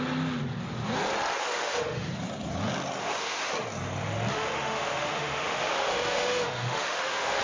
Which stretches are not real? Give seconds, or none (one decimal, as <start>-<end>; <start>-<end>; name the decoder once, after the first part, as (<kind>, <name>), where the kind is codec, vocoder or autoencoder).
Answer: 1.4-2.1 (autoencoder, DAC-VAE); 3.0-3.5; 4.3-7.4